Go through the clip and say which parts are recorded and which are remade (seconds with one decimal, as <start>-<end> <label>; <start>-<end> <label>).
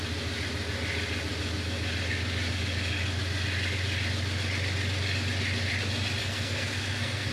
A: 0.0-6.2 recorded; 6.2-7.3 remade